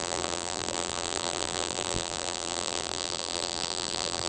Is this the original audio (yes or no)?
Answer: no